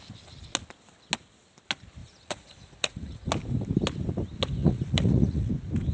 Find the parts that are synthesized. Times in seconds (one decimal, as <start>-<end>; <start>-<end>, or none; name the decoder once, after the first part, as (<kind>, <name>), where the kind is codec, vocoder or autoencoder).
2.0-3.3 (vocoder, Vocos); 4.6-5.5